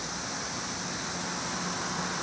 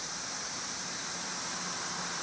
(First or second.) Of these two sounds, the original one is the first